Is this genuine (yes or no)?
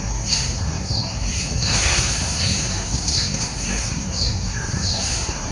no